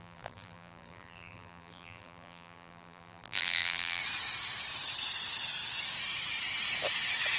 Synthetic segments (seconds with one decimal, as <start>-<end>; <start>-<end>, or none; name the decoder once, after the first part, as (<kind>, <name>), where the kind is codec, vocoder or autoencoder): 0.0-4.0 (vocoder, BigVGAN v2)